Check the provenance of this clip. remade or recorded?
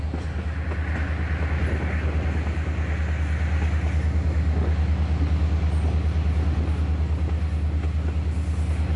recorded